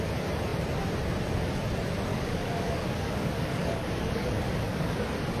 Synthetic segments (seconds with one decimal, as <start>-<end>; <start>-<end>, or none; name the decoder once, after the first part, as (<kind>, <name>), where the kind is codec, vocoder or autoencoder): 2.1-5.0 (codec, DAC)

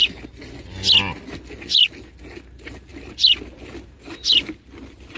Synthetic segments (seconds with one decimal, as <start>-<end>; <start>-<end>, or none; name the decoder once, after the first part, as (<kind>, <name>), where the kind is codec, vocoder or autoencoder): none

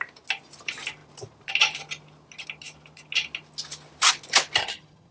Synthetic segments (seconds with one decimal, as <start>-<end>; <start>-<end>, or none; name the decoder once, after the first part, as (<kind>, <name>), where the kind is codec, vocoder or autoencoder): 4.6-5.1 (vocoder, HiFi-GAN)

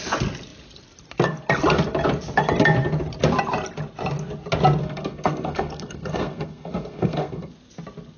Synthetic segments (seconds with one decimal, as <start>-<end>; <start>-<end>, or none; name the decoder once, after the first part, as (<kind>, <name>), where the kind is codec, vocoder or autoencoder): 4.8-7.5 (codec, SNAC)

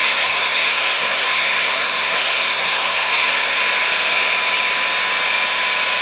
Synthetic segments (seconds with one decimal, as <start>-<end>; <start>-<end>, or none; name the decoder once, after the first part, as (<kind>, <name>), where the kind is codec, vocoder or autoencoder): 0.0-3.6 (codec, SNAC)